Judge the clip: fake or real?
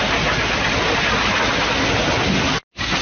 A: real